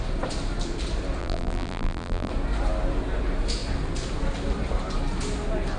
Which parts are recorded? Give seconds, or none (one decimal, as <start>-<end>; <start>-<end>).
0.0-1.2; 2.3-5.8